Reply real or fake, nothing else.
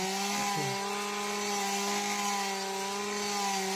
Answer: real